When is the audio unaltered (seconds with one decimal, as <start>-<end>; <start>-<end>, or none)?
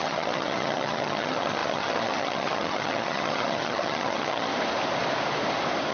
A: 4.5-5.9